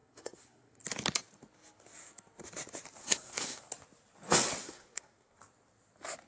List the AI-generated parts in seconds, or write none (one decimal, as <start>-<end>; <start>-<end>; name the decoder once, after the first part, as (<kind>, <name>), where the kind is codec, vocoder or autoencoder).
0.0-0.8 (codec, SNAC); 3.0-3.6; 4.6-5.4